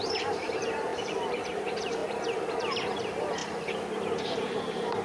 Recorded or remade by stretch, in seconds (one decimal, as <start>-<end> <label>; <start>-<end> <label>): 0.0-2.0 remade; 2.0-2.6 recorded; 2.6-3.4 remade; 3.4-4.2 recorded; 4.2-5.0 remade